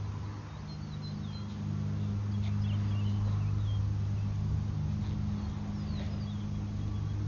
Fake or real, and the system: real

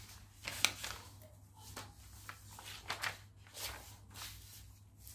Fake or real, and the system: real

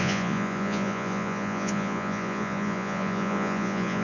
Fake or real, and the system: fake, vocoder, Vocos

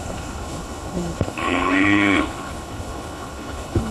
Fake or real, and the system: fake, codec, HILCodec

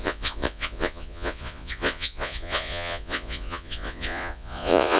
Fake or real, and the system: fake, vocoder, Vocos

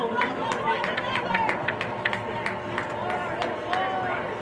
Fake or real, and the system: real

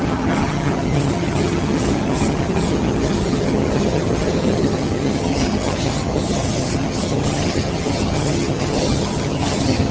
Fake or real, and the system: fake, vocoder, HiFi-GAN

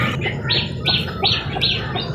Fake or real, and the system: real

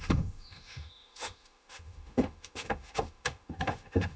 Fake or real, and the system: fake, autoencoder, DAC-VAE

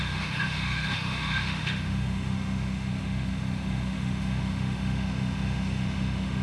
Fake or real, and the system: fake, autoencoder, DAC-VAE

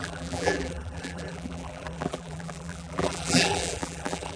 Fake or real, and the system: fake, vocoder, BigVGAN v2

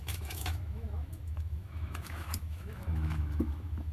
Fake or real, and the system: fake, autoencoder, DAC-VAE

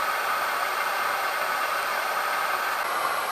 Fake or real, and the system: real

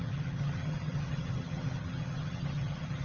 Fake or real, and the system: fake, vocoder, HiFi-GAN